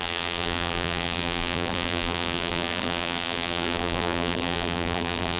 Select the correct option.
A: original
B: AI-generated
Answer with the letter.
B